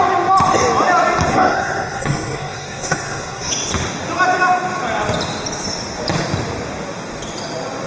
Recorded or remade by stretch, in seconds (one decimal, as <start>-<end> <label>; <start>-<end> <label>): 0.0-1.3 recorded; 1.3-3.5 remade; 3.5-7.9 recorded